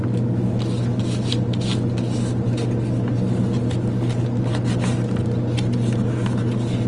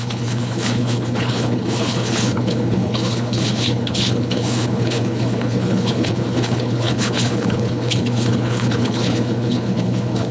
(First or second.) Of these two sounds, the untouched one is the first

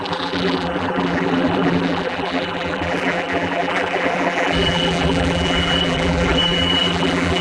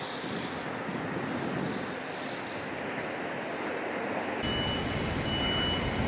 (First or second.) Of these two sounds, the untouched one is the second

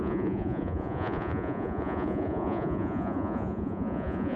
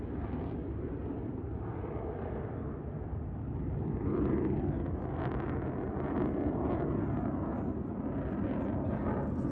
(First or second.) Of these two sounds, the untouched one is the second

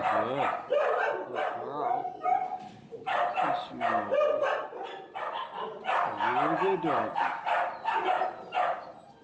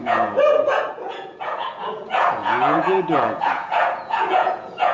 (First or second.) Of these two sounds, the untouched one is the first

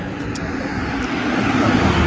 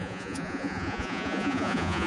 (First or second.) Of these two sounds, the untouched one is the first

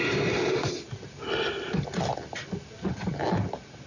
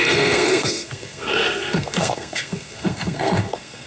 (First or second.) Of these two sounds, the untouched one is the first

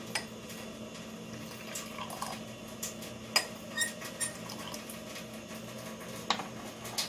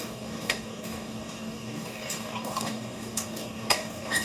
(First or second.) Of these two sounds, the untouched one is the first